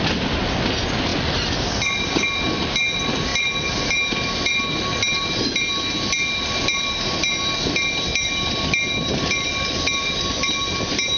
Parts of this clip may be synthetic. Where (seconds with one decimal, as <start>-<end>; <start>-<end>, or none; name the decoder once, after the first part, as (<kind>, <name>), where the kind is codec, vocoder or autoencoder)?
none